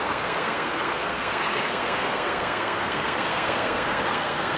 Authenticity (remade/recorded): remade